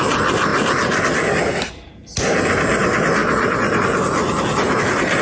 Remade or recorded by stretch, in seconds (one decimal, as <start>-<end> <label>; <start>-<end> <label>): 0.0-5.2 recorded